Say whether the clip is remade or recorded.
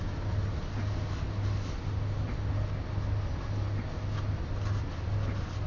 recorded